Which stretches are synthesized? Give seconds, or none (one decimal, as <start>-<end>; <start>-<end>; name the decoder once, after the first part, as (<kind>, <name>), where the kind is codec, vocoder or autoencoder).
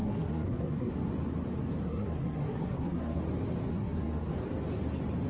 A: 0.0-0.9 (codec, SNAC); 1.8-3.2; 3.7-4.3